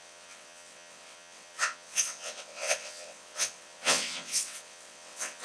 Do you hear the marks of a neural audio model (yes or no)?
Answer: yes